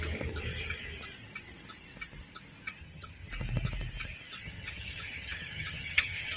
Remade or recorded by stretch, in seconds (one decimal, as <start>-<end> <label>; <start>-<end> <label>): 0.0-2.8 recorded; 2.8-3.3 remade; 3.3-4.4 recorded; 4.4-6.4 remade